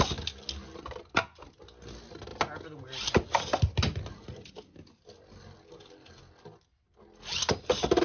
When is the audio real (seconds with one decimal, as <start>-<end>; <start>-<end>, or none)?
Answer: 0.0-8.0